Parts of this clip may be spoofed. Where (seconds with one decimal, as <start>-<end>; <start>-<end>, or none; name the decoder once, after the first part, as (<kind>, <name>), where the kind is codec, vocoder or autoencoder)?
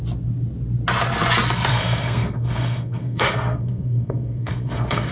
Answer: 1.7-5.1 (codec, SNAC)